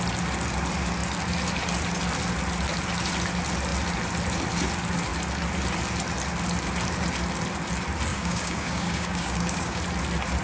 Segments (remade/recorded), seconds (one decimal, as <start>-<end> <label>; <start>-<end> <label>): 0.0-8.1 recorded; 8.1-9.8 remade; 9.8-10.4 recorded